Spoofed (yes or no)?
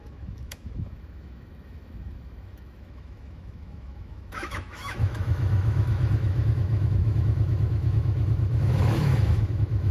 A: yes